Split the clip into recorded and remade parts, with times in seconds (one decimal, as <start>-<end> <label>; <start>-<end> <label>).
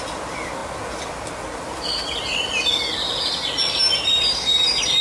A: 0.0-5.0 recorded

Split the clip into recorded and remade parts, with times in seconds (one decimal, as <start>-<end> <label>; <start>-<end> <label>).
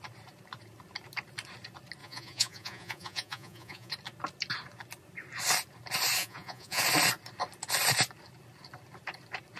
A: 0.0-2.0 recorded; 2.0-3.9 remade; 3.9-6.2 recorded; 6.2-6.8 remade; 6.8-9.6 recorded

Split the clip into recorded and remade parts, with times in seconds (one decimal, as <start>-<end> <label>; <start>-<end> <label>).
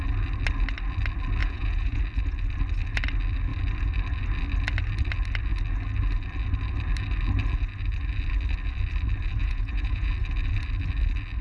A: 0.0-1.4 recorded; 1.4-2.0 remade; 2.0-9.4 recorded; 9.4-10.1 remade; 10.1-11.4 recorded